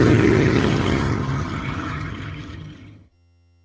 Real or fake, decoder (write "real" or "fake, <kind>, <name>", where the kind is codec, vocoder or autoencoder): fake, vocoder, HiFi-GAN